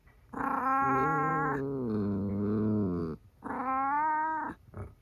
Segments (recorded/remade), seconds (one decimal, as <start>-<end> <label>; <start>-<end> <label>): 0.0-0.6 remade; 0.6-5.0 recorded